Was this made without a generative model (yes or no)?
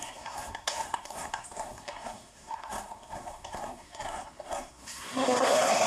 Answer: no